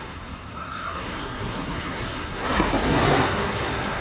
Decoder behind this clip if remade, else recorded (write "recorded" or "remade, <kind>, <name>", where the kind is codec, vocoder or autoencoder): remade, codec, SNAC